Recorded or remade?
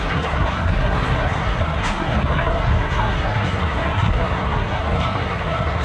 remade